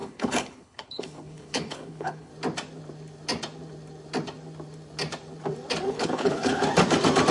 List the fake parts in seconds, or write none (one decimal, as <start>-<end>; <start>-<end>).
0.0-2.3; 5.9-6.6